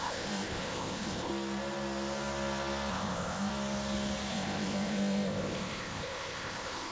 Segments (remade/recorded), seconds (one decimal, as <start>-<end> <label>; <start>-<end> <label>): 0.0-1.3 remade; 1.3-2.9 recorded; 2.9-3.5 remade; 3.5-4.3 recorded; 4.3-6.9 remade